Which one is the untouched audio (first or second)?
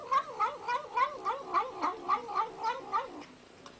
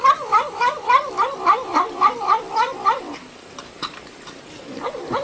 first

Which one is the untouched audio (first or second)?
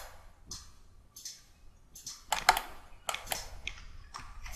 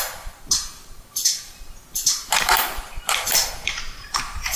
first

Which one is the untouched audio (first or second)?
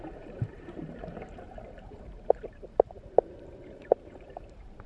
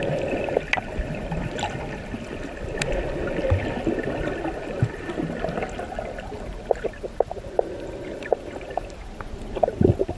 second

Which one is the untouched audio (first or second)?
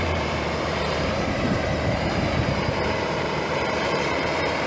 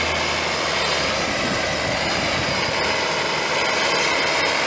second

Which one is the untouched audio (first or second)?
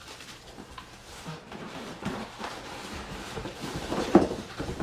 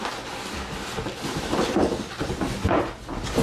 second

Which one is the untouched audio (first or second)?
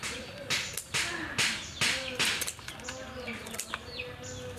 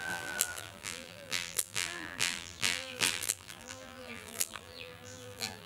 first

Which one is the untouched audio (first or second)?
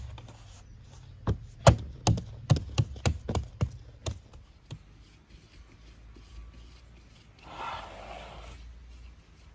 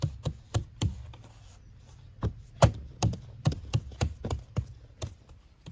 first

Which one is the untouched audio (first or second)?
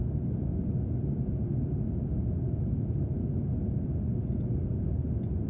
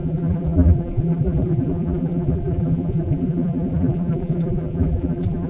first